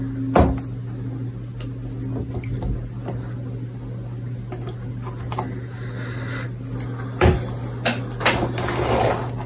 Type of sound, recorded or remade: recorded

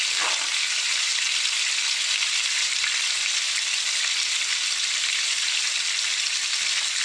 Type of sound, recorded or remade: recorded